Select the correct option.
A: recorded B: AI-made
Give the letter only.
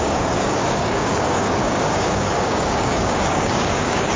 B